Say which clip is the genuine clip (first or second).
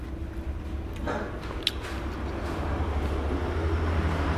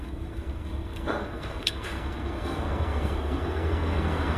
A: first